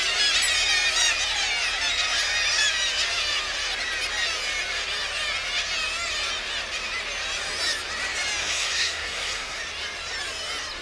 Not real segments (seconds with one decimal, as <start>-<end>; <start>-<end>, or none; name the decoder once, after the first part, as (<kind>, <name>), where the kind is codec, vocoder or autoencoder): 8.4-9.6 (codec, SNAC)